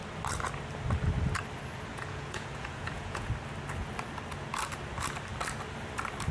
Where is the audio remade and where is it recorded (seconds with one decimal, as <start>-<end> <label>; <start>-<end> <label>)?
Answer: 0.0-1.9 recorded; 1.9-3.3 remade; 3.3-6.3 recorded